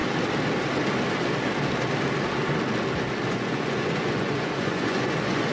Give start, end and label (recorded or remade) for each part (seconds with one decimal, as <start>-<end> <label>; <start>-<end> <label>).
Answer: 0.0-3.3 recorded; 3.3-5.5 remade